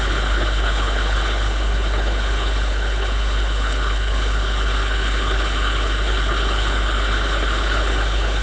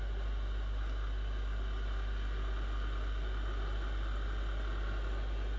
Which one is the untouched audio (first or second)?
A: second